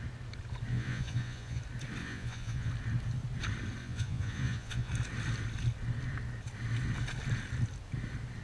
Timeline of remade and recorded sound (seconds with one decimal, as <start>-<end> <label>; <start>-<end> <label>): 0.0-0.7 recorded; 0.7-1.6 remade; 1.6-2.0 recorded; 2.0-2.7 remade; 2.7-3.8 recorded; 3.8-4.9 remade; 4.9-8.4 recorded